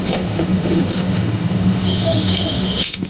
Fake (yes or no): yes